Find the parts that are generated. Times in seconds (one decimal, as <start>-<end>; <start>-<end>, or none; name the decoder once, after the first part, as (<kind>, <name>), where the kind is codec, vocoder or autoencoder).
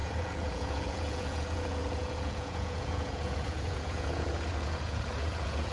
0.0-5.7 (vocoder, Vocos)